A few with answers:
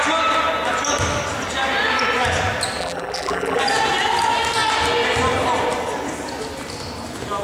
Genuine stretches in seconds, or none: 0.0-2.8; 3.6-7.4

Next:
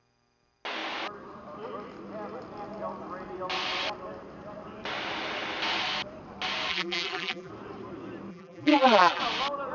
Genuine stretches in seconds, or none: 0.0-6.7; 7.5-8.3; 9.2-9.7

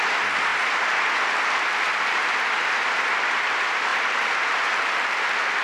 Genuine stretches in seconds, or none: 0.0-5.6

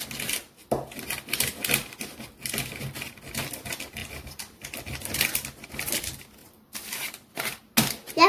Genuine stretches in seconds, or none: 0.0-4.0; 4.8-6.4; 7.6-8.3